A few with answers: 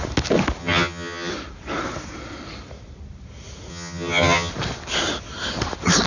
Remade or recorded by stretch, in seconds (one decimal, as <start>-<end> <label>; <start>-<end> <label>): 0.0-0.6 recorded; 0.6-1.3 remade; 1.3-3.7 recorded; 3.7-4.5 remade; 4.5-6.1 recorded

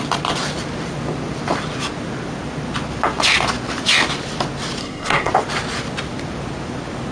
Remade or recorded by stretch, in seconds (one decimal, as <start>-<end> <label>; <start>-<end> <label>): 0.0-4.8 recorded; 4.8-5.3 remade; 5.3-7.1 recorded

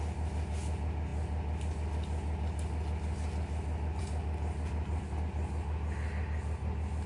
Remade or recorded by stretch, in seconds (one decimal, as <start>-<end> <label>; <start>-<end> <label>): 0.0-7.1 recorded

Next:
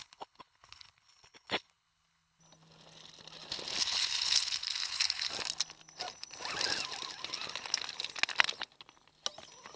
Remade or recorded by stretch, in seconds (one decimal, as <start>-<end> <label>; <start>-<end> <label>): 0.0-2.4 remade; 2.4-3.8 recorded; 3.8-5.3 remade; 5.3-9.8 recorded

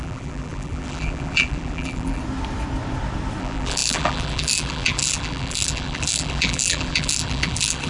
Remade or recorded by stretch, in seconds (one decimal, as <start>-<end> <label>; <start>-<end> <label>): 0.0-2.2 remade; 2.2-3.4 recorded; 3.4-7.9 remade

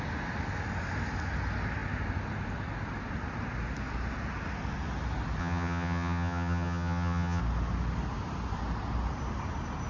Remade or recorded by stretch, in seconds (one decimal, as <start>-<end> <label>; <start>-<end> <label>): 0.0-5.4 recorded; 5.4-7.4 remade; 7.4-9.9 recorded

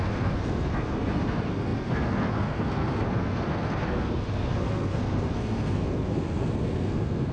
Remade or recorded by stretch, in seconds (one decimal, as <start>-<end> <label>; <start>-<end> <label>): 0.0-7.3 remade

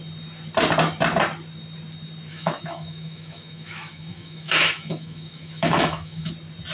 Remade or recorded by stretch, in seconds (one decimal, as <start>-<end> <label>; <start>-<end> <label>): 0.0-2.3 recorded; 2.3-6.3 remade; 6.3-6.7 recorded